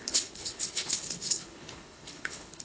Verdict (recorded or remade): remade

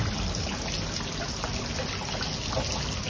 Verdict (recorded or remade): recorded